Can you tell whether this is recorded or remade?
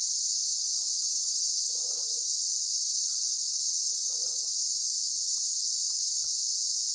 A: recorded